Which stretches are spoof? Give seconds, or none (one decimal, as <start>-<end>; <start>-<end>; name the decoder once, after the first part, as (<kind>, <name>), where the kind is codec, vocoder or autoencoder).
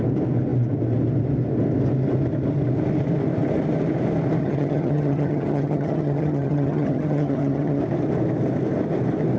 4.4-7.8 (vocoder, HiFi-GAN)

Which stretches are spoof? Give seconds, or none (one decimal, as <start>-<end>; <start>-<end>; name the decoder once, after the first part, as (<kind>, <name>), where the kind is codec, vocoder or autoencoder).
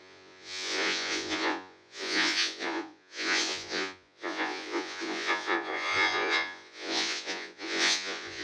0.0-8.4 (vocoder, Vocos)